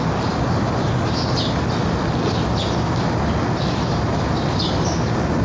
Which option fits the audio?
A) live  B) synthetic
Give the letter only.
A